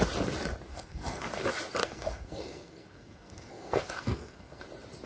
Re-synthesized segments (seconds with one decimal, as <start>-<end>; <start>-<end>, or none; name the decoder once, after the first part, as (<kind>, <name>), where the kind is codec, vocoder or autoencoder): 0.7-1.2 (codec, SNAC); 1.8-4.6

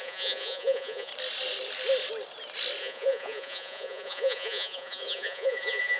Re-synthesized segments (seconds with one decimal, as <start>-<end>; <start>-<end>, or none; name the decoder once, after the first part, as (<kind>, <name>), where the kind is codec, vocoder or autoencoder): 0.0-1.1 (vocoder, Vocos); 2.8-6.0

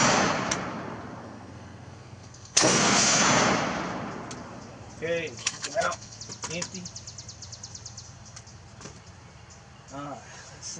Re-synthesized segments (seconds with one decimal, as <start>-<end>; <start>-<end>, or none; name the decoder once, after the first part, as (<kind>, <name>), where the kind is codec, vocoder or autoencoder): 1.2-3.2 (codec, SNAC); 5.4-6.2

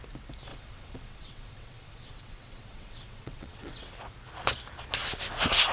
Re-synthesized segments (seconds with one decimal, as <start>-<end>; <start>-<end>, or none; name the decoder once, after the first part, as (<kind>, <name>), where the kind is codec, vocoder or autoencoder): 0.5-3.9 (vocoder, WaveNeXt)

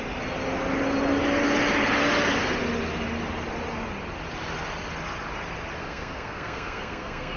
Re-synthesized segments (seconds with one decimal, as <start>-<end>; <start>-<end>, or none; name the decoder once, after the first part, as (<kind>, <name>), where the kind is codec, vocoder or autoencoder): 5.8-7.4 (codec, SNAC)